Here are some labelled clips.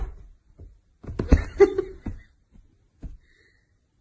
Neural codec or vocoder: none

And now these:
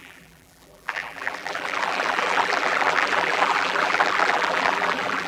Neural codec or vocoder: vocoder, BigVGAN v2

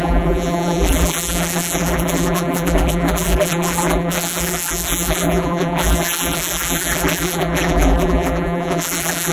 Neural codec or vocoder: vocoder, BigVGAN v2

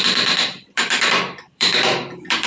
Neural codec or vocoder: vocoder, BigVGAN v2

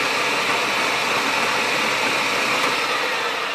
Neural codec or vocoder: none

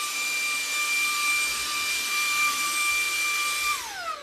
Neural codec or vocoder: vocoder, BigVGAN v2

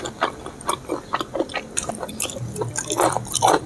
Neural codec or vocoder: vocoder, BigVGAN v2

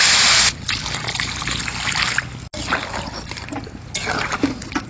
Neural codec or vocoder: none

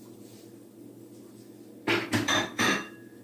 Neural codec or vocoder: vocoder, BigVGAN v2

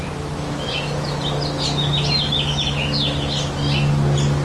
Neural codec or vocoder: none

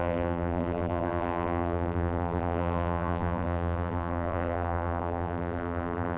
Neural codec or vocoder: vocoder, BigVGAN v2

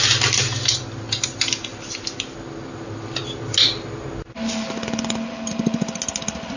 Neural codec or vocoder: none